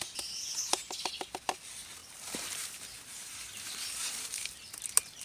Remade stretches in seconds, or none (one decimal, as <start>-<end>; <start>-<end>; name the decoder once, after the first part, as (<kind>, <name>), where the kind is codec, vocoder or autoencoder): 2.0-4.5 (vocoder, BigVGAN v2)